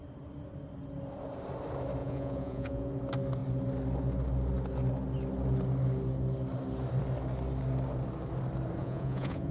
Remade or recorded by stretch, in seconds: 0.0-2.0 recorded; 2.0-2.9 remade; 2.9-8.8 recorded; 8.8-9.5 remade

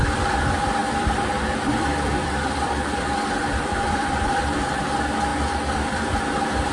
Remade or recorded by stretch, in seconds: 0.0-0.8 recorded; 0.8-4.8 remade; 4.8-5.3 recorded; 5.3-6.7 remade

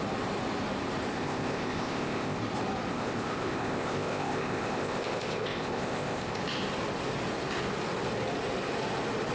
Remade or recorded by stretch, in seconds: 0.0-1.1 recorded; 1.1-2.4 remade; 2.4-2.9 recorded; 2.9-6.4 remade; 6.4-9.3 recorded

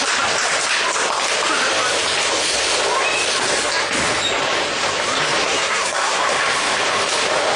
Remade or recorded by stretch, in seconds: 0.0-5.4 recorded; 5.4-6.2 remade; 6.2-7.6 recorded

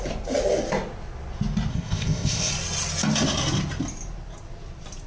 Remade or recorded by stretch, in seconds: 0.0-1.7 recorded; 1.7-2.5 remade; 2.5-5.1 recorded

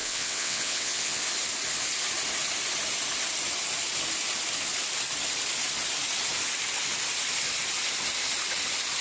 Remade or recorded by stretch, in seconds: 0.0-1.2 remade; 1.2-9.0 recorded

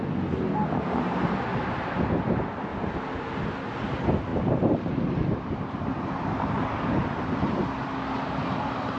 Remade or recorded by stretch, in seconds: 0.0-1.5 recorded; 1.5-2.0 remade; 2.0-2.7 recorded; 2.7-3.2 remade; 3.2-4.3 recorded; 4.3-4.9 remade; 4.9-9.0 recorded

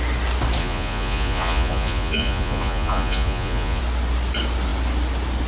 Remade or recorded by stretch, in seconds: 0.0-0.6 recorded; 0.6-3.8 remade; 3.8-5.5 recorded